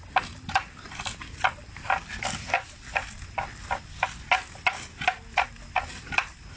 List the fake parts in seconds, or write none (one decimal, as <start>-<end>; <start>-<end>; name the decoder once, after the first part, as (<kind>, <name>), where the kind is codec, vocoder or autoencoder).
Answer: none